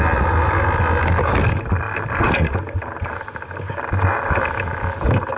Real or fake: real